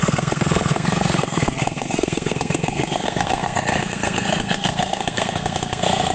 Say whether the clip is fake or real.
fake